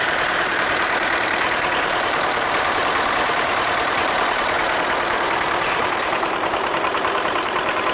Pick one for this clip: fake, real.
fake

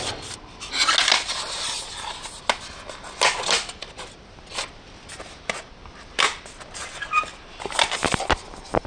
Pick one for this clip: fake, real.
real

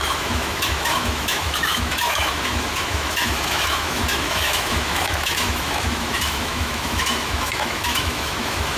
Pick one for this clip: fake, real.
fake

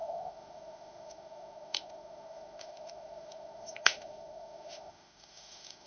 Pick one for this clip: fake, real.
fake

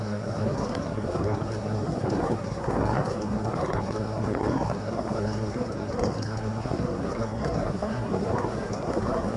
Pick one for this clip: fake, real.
fake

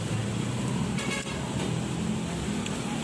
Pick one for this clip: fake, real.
real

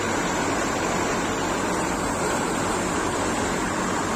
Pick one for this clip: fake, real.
real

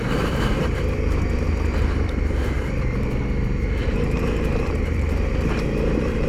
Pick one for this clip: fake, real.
fake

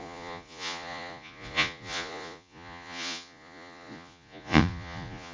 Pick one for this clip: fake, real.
fake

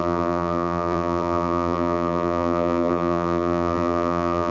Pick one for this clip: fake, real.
fake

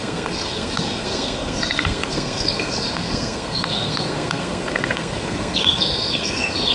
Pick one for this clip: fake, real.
fake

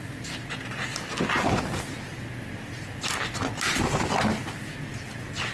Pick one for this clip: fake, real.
real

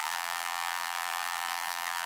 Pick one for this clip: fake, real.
fake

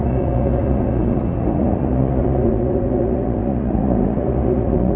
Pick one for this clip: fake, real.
fake